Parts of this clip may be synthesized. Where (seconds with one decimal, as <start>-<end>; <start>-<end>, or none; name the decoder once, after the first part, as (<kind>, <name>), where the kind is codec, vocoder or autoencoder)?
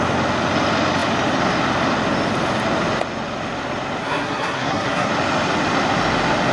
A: 4.0-5.1 (codec, SNAC)